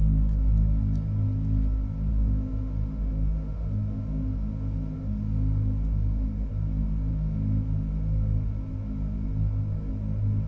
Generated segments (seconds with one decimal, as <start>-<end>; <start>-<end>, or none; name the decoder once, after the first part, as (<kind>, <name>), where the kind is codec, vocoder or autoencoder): 2.1-6.5 (autoencoder, DAC-VAE); 7.1-7.9